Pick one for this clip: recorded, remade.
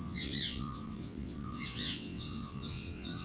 remade